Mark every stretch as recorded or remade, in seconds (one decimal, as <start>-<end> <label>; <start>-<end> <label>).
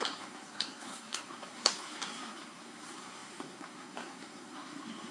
0.0-5.1 remade